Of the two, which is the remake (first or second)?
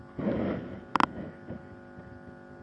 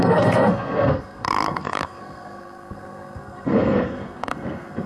second